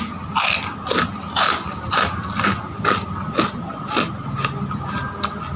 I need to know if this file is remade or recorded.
recorded